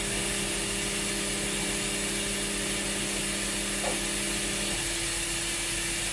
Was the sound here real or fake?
real